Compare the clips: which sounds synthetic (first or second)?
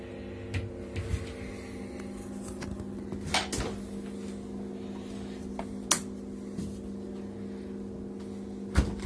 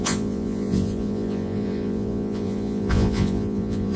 second